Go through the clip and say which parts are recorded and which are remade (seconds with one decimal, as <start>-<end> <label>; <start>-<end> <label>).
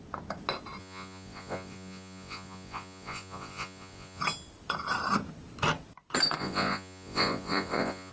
0.0-0.8 recorded; 0.8-4.2 remade; 4.2-6.4 recorded; 6.4-8.1 remade